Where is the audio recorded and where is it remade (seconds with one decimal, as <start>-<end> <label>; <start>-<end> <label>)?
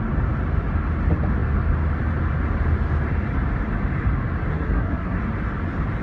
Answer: 0.0-4.5 recorded; 4.5-5.2 remade; 5.2-6.0 recorded